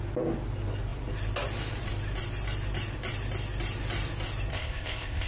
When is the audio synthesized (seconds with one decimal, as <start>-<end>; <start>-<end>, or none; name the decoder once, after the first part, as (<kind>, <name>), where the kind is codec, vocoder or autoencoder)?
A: 4.5-5.3 (codec, ZipCodec)